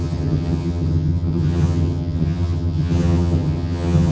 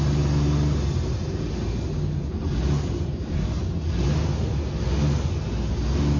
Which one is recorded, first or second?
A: second